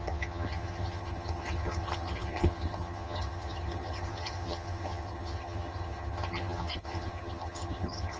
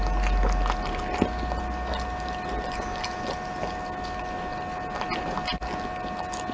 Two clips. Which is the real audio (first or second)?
second